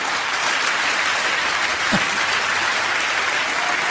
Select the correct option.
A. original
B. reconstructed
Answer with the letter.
A